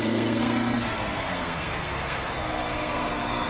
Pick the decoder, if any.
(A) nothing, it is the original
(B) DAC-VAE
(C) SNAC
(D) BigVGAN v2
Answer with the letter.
C